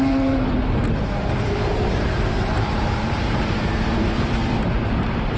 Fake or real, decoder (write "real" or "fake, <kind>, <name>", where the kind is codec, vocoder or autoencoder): fake, vocoder, BigVGAN v2